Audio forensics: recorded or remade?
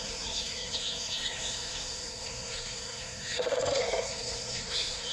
remade